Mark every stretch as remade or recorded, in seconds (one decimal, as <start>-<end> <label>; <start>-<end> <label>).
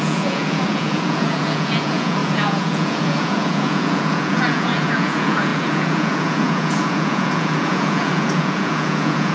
0.0-9.3 remade